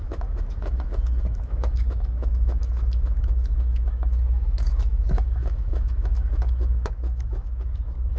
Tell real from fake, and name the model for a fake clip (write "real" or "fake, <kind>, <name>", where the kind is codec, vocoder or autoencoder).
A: fake, autoencoder, DAC-VAE